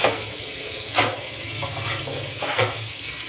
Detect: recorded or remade remade